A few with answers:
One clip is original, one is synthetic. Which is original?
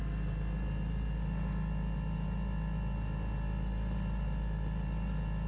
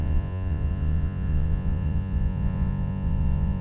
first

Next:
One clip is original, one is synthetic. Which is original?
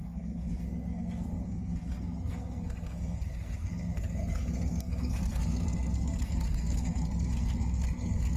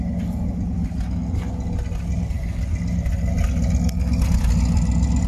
second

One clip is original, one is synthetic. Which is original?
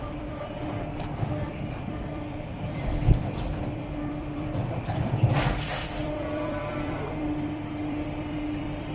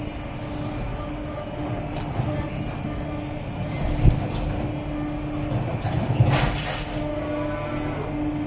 second